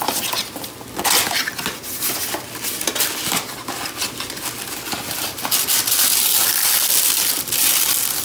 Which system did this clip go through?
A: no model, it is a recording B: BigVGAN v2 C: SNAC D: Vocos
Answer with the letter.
A